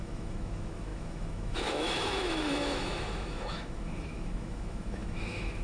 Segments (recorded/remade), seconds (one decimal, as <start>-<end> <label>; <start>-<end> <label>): 0.0-5.6 remade